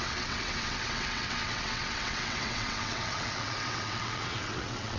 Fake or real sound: fake